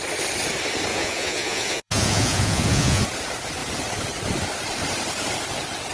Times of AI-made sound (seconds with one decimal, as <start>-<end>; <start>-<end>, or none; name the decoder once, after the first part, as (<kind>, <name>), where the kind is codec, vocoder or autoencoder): 0.9-3.0 (vocoder, Vocos)